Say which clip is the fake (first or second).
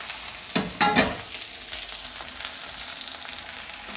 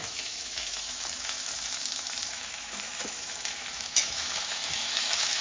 second